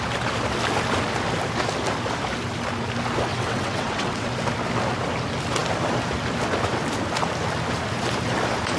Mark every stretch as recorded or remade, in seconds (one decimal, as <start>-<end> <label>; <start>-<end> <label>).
0.0-3.3 recorded; 3.3-4.3 remade; 4.3-8.8 recorded